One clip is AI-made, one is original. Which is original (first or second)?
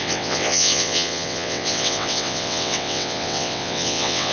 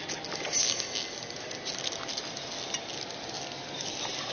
second